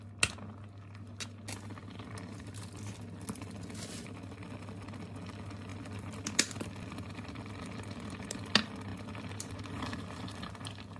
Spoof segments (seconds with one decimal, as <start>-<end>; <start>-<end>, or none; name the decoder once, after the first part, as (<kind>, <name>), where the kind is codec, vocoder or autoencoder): 5.7-8.2 (vocoder, BigVGAN v2)

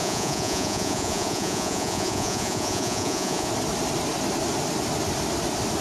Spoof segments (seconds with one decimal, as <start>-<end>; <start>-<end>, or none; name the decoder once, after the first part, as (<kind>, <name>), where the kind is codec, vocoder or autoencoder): 0.0-3.5 (vocoder, Vocos)

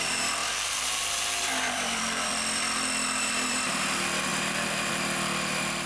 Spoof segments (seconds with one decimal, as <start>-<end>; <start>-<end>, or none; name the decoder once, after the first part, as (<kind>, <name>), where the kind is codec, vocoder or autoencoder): 0.4-3.8 (vocoder, BigVGAN v2); 4.3-4.9

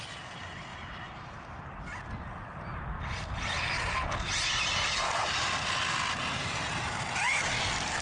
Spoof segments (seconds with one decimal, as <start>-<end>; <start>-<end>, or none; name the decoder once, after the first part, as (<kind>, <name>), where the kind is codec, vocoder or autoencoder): 0.7-1.8 (vocoder, BigVGAN v2)